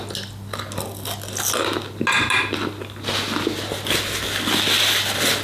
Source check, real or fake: real